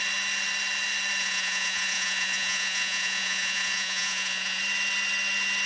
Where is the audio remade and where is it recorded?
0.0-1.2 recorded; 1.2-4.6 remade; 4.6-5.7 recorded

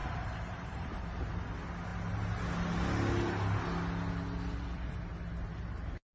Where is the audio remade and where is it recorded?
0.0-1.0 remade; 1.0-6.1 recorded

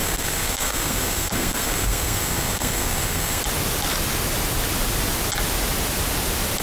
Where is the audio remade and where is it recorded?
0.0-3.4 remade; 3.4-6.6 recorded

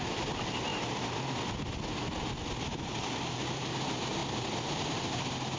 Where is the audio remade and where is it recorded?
0.0-0.7 remade; 0.7-2.7 recorded; 2.7-4.2 remade; 4.2-5.1 recorded; 5.1-5.6 remade

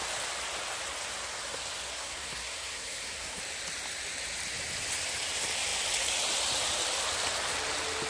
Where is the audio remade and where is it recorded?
0.0-1.9 recorded; 1.9-3.4 remade; 3.4-8.1 recorded